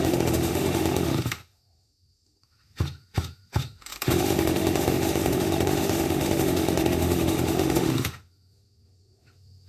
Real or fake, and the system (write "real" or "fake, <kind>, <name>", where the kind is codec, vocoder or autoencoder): fake, autoencoder, DAC-VAE